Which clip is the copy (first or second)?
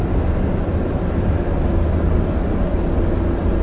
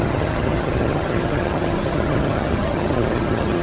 second